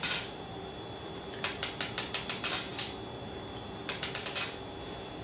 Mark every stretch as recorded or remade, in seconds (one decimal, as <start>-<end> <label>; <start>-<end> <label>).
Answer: 0.0-5.2 recorded